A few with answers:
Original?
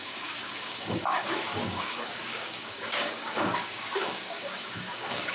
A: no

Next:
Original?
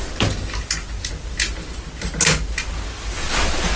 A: yes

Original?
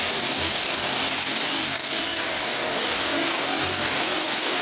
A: no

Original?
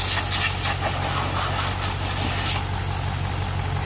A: yes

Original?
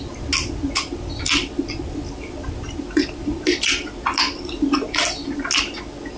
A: yes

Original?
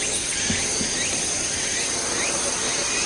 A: yes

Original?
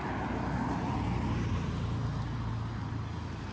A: yes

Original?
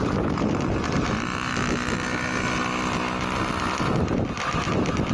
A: yes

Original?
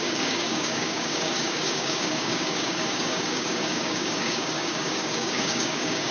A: no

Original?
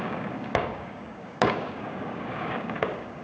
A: no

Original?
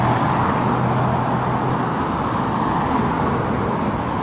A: yes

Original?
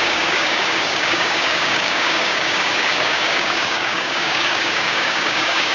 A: no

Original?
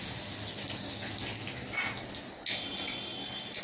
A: yes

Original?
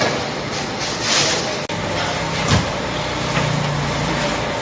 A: yes